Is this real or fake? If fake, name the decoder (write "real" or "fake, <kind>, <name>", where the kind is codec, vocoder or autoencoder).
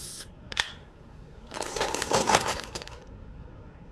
fake, codec, SNAC